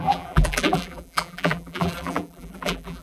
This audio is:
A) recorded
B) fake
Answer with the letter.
B